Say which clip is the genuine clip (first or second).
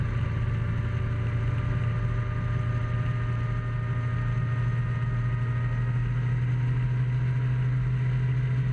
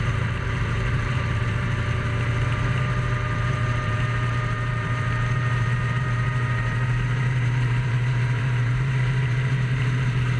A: first